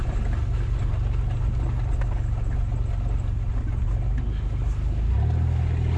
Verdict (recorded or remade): recorded